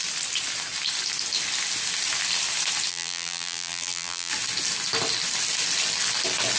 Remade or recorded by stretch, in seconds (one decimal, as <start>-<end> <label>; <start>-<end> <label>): 0.0-2.9 recorded; 2.9-4.3 remade; 4.3-6.6 recorded